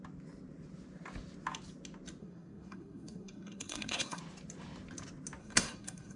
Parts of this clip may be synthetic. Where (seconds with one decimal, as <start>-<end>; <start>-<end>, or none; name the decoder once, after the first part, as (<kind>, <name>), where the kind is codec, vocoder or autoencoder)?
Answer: 2.2-4.2 (codec, SNAC); 5.4-6.2